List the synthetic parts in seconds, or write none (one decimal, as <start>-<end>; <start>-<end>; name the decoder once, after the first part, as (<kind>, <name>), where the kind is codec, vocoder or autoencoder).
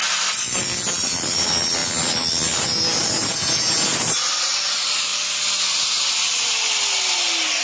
none